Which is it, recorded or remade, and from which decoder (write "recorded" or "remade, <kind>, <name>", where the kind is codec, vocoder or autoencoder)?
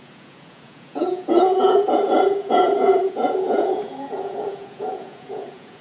remade, vocoder, Vocos